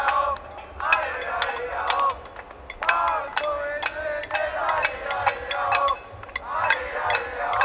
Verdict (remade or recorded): recorded